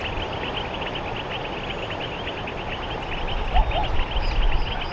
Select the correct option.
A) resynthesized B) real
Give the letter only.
B